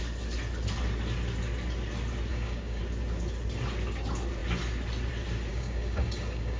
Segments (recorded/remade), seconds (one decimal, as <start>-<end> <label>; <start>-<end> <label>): 0.0-2.3 recorded; 2.3-2.8 remade; 2.8-5.5 recorded; 5.5-6.6 remade